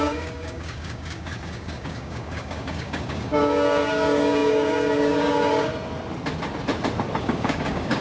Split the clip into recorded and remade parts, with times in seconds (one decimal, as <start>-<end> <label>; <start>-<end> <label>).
0.0-5.7 remade; 5.7-7.2 recorded; 7.2-8.0 remade